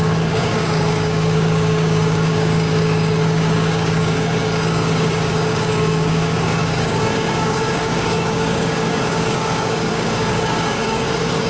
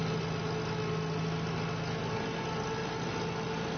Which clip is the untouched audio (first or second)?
second